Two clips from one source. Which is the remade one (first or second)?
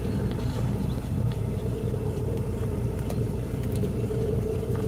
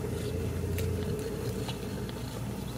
first